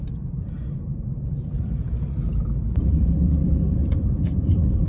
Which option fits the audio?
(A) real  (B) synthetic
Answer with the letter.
B